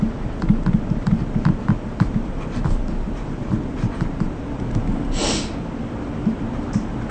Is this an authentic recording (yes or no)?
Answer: no